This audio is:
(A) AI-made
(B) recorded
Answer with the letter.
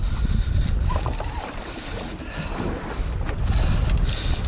B